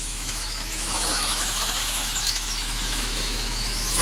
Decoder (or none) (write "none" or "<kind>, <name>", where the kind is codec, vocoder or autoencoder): autoencoder, DAC-VAE